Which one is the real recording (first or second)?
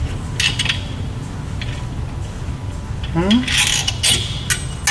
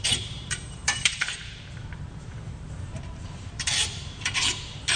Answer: first